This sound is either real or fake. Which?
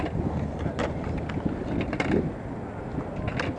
real